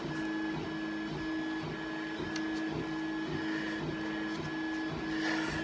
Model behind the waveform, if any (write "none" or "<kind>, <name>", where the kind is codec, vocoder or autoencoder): none